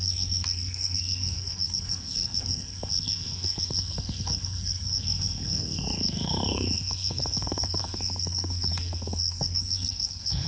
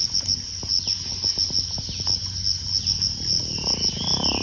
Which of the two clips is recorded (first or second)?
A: second